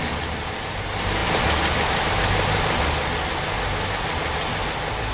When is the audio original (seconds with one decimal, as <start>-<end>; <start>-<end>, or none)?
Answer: 0.0-5.1